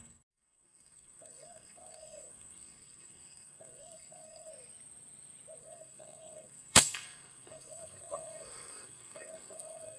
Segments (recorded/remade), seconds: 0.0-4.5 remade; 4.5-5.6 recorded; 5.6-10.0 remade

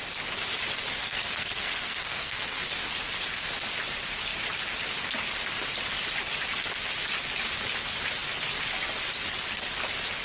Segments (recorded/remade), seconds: 0.0-1.0 recorded; 1.0-2.7 remade; 2.7-10.2 recorded

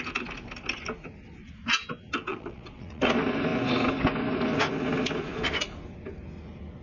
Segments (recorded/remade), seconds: 0.0-2.3 recorded; 2.3-3.0 remade; 3.0-6.8 recorded

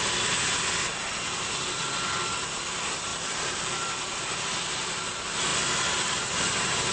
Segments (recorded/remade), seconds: 0.0-3.1 recorded; 3.1-4.4 remade; 4.4-6.9 recorded

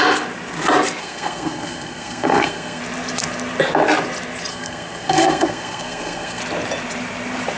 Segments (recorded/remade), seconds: 0.0-1.0 recorded; 1.0-2.8 remade; 2.8-4.5 recorded; 4.5-6.4 remade; 6.4-7.6 recorded